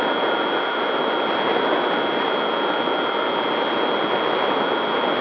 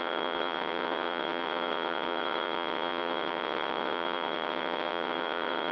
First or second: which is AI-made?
second